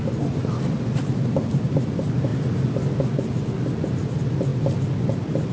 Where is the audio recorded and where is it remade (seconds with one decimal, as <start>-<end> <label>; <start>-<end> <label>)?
0.0-5.5 recorded